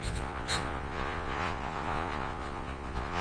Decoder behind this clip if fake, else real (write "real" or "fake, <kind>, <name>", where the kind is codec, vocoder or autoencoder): fake, vocoder, Vocos